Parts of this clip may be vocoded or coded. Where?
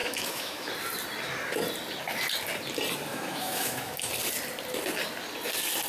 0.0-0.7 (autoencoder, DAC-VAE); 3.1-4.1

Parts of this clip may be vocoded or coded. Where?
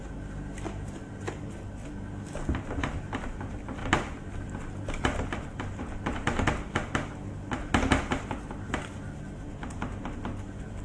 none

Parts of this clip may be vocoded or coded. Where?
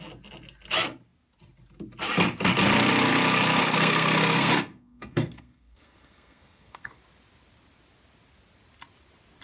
3.6-7.0 (codec, SNAC)